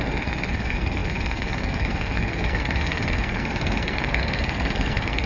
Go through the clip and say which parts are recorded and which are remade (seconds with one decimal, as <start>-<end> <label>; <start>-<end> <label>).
0.0-5.3 remade